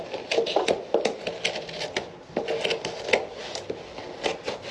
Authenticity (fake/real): real